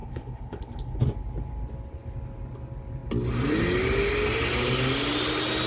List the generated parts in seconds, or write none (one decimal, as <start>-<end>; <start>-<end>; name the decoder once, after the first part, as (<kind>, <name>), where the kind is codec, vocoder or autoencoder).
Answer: 0.0-1.0 (codec, HILCodec)